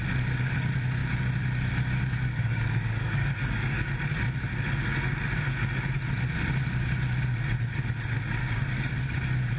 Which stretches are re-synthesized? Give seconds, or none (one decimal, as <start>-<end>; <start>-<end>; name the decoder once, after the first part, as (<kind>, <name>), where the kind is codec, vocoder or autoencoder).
2.3-3.9 (codec, DAC); 8.4-8.9